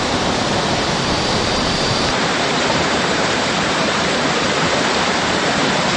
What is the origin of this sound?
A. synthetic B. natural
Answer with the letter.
A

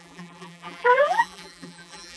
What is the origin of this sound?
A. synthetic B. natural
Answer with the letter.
A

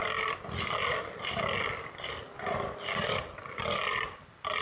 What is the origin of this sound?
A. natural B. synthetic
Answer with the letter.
A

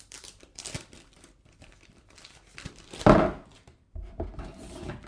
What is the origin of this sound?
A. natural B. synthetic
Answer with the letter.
B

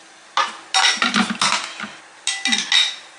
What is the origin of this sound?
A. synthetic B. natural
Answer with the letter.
B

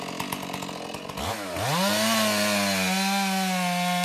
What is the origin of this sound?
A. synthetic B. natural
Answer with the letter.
B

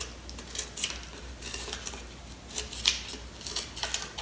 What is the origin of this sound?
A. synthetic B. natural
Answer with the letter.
B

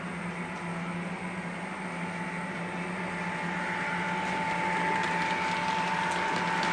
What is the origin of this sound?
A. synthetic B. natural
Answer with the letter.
B